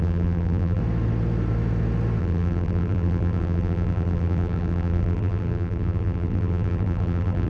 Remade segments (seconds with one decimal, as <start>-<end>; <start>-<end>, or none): 0.0-0.8; 2.2-7.5